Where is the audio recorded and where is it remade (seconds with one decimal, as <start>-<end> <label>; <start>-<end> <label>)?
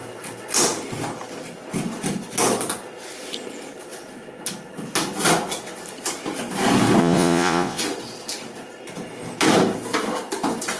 0.0-7.0 recorded; 7.0-7.8 remade; 7.8-10.8 recorded